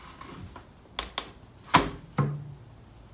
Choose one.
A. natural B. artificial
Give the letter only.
A